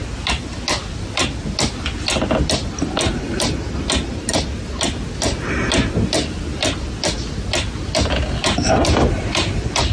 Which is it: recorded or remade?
recorded